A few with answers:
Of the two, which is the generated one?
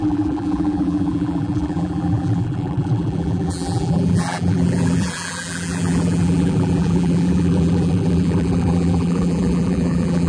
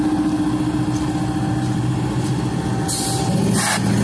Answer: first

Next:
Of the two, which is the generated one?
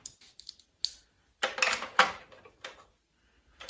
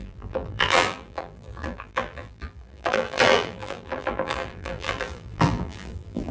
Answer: second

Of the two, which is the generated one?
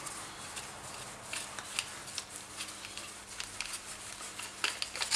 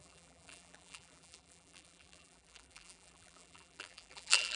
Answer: second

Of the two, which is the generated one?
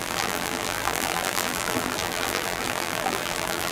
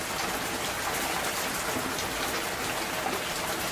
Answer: first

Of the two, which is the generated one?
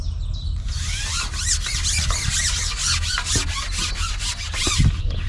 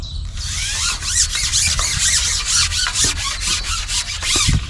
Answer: second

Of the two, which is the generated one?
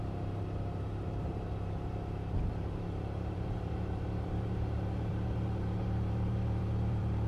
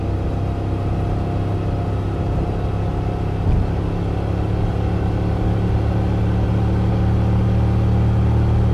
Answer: first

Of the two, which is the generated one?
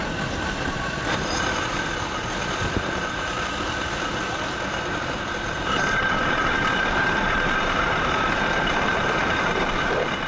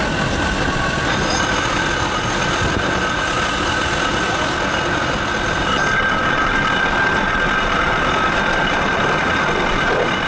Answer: first